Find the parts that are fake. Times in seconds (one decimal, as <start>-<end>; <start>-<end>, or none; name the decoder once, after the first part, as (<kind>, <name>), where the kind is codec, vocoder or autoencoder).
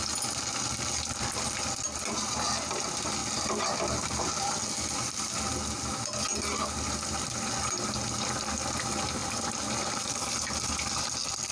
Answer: none